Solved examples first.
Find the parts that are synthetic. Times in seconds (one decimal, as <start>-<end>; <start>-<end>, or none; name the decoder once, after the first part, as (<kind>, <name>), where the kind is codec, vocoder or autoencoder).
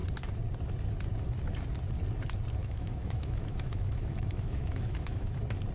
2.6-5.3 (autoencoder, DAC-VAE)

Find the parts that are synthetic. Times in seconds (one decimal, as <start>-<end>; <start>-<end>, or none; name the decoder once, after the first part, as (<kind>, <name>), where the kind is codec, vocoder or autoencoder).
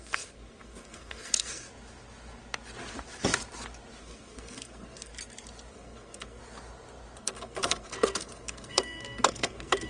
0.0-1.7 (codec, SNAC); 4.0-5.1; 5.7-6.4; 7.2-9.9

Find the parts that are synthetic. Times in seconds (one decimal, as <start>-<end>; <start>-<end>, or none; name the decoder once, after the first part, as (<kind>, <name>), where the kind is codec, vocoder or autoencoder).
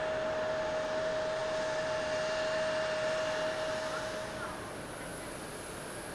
none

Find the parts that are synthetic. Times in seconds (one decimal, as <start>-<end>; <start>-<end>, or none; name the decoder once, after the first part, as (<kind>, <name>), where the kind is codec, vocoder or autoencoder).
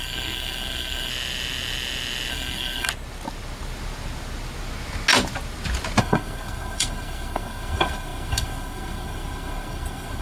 0.0-1.1 (codec, SNAC); 2.3-2.9; 6.0-10.2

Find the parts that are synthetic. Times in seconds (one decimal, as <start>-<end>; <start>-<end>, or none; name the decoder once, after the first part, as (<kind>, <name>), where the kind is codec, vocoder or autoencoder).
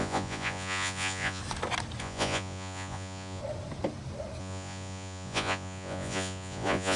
0.0-1.4 (vocoder, Vocos); 2.0-3.4; 4.4-7.0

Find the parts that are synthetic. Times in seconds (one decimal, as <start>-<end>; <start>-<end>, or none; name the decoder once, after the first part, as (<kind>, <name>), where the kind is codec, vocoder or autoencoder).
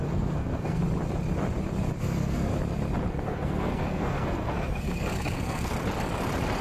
0.0-0.8 (codec, SNAC); 2.0-2.5; 3.1-5.7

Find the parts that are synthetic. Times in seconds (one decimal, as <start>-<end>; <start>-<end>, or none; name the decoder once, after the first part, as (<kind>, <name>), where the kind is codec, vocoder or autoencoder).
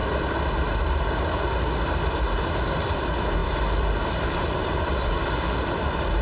2.8-6.2 (vocoder, BigVGAN v2)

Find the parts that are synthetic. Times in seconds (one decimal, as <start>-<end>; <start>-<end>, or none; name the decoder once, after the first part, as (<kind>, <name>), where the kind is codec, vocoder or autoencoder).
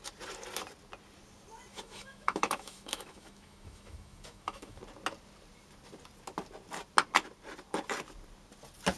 1.7-4.8 (autoencoder, DAC-VAE)